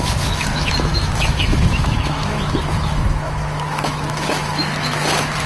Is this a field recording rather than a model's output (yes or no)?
no